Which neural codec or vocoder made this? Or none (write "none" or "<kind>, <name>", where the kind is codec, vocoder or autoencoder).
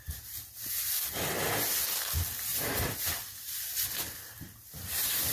none